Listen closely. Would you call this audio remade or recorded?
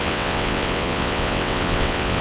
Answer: remade